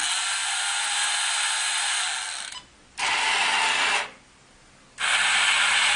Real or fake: real